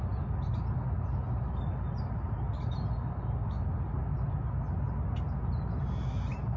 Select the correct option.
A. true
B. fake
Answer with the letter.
A